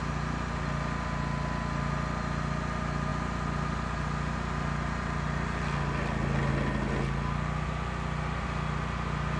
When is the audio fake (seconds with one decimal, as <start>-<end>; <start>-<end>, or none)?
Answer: none